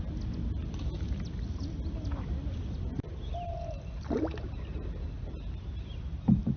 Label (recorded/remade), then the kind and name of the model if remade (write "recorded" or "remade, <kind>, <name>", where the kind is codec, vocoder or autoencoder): recorded